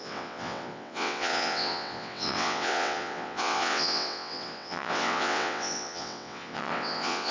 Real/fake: fake